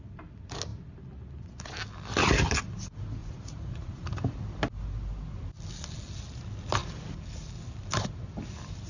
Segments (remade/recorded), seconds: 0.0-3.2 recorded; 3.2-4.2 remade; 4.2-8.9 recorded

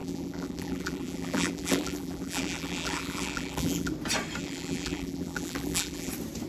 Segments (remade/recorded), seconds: 0.0-3.9 remade; 3.9-4.4 recorded; 4.4-6.1 remade; 6.1-6.5 recorded

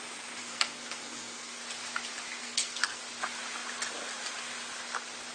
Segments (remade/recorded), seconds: 0.0-0.4 recorded; 0.4-1.6 remade; 1.6-2.4 recorded; 2.4-3.0 remade; 3.0-5.3 recorded

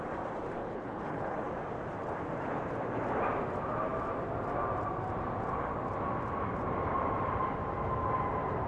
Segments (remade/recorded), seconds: 0.0-0.6 recorded; 0.6-1.5 remade; 1.5-8.7 recorded

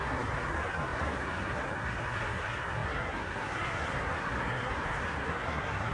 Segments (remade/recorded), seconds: 0.0-5.9 remade